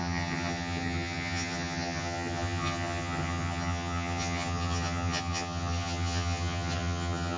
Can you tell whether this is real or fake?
fake